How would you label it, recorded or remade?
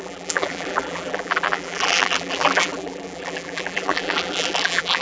remade